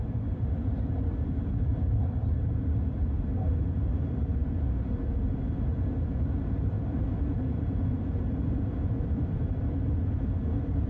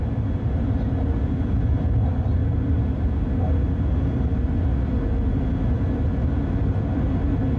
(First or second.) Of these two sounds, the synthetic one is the first